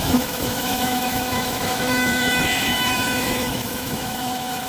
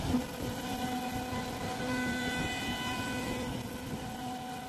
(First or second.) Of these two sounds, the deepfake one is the first